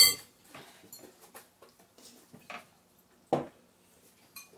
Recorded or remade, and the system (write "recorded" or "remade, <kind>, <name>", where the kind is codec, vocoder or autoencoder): recorded